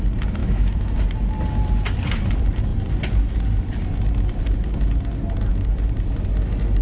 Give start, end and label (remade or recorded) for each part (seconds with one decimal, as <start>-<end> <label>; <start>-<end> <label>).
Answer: 0.0-0.4 recorded; 0.4-0.9 remade; 0.9-6.8 recorded